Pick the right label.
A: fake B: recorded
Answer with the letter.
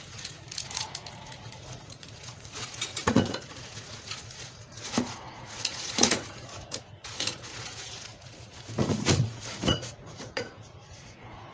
A